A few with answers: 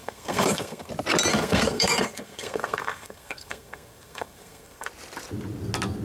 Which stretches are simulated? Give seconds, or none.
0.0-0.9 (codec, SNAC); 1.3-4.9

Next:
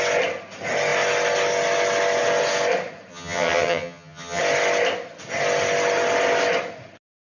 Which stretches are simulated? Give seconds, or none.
3.1-4.4 (vocoder, HiFi-GAN)

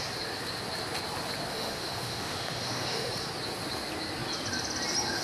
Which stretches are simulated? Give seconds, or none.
1.5-3.1 (autoencoder, DAC-VAE)

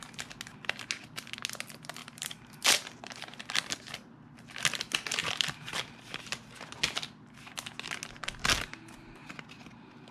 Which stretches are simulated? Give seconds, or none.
2.0-2.5 (vocoder, BigVGAN v2); 5.2-5.8

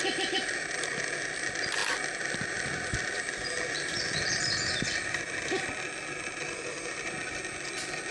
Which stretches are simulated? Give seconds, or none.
none